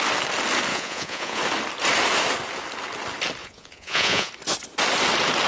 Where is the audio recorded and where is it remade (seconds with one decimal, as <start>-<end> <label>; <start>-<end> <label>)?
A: 0.0-0.7 recorded; 0.7-1.4 remade; 1.4-3.4 recorded; 3.4-4.3 remade; 4.3-5.5 recorded